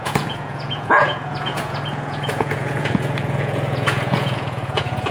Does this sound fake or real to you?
fake